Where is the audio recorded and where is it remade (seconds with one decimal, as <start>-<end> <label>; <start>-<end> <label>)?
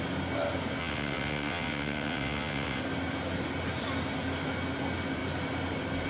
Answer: 0.0-0.8 recorded; 0.8-2.8 remade; 2.8-6.1 recorded